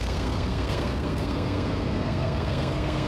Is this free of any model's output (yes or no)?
no